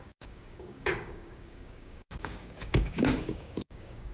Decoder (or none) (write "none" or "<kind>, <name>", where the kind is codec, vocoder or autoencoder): codec, DAC